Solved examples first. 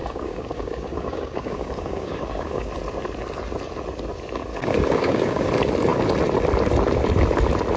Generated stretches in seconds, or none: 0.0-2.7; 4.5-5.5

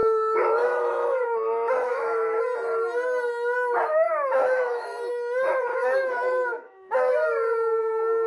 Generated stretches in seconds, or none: 0.0-2.4; 3.9-5.1; 5.7-7.1

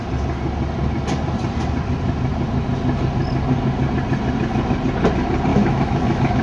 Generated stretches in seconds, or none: 5.5-6.4

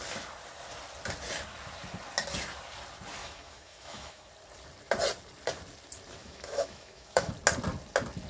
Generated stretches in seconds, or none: 3.2-4.3; 6.2-7.3

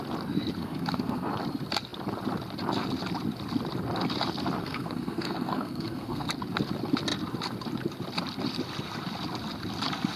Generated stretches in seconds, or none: 0.6-1.3; 4.6-6.3